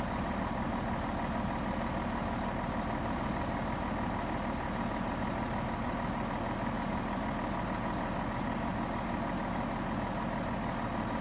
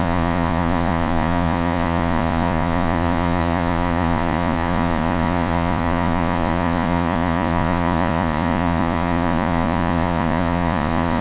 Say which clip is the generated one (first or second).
second